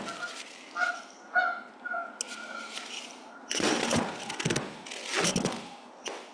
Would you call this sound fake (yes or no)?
no